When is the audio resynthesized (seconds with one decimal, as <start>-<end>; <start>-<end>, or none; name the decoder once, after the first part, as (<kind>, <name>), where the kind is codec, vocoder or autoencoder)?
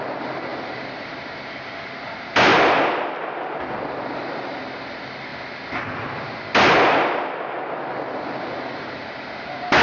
0.5-1.9 (vocoder, BigVGAN v2); 5.3-6.1